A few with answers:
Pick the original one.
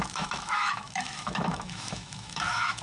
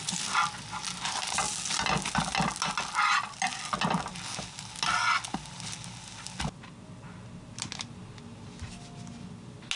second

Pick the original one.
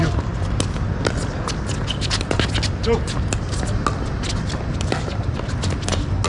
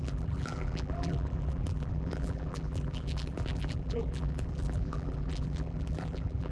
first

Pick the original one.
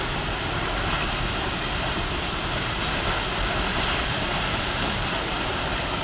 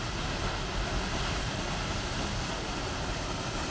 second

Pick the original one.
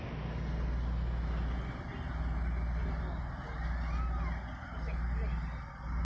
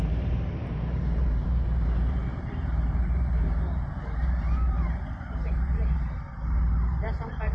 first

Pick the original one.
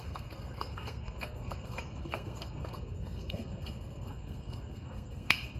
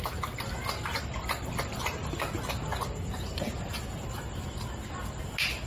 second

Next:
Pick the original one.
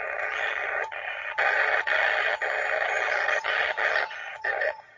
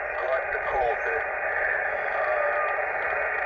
second